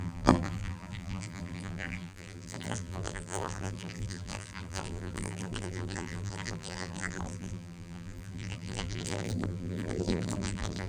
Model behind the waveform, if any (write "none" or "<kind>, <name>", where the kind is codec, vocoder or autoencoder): vocoder, BigVGAN v2